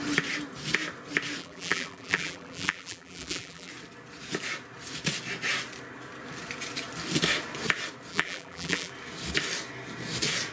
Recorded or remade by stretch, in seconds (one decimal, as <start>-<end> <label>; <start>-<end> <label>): 0.0-1.4 recorded; 1.4-3.7 remade; 3.7-8.1 recorded; 8.1-8.9 remade; 8.9-10.5 recorded